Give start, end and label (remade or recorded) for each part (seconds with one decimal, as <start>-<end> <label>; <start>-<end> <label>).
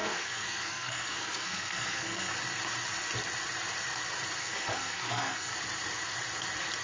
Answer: 0.0-2.3 remade; 2.3-4.4 recorded; 4.4-5.5 remade; 5.5-6.8 recorded